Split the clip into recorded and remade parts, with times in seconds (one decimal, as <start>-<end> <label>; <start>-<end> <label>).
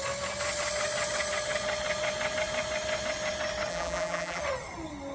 0.0-3.7 recorded; 3.7-4.4 remade; 4.4-5.1 recorded